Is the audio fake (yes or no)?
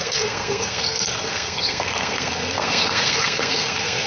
yes